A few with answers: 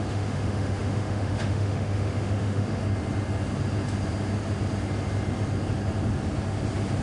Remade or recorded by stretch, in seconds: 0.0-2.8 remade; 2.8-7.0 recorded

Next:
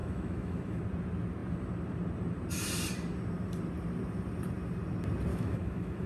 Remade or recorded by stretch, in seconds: 0.0-0.8 remade; 0.8-5.3 recorded; 5.3-6.1 remade

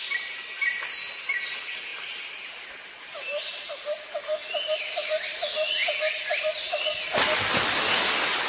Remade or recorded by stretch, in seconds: 0.0-8.5 recorded

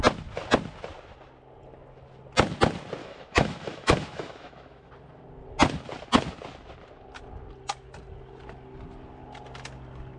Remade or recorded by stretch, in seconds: 0.0-3.0 recorded; 3.0-4.9 remade; 4.9-10.2 recorded

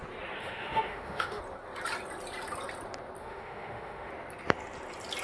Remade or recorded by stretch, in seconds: 0.0-0.4 recorded; 0.4-1.4 remade; 1.4-3.2 recorded; 3.2-4.1 remade; 4.1-5.2 recorded

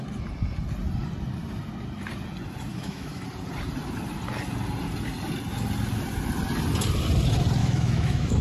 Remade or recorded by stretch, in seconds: 0.0-2.7 recorded; 2.7-3.2 remade; 3.2-7.6 recorded; 7.6-8.4 remade